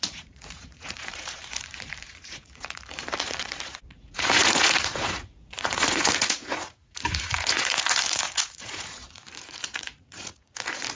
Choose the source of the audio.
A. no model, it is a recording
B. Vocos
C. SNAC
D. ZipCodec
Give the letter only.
B